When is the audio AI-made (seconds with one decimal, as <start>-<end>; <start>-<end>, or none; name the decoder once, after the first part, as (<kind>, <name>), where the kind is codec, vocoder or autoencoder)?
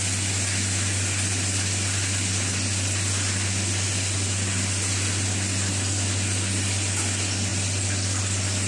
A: none